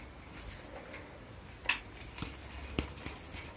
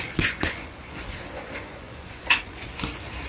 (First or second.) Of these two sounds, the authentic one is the first